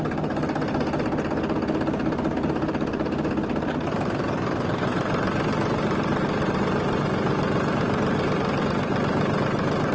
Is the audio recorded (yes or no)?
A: yes